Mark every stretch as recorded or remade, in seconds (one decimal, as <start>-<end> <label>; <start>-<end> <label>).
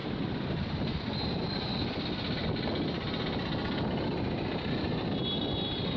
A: 0.0-6.0 recorded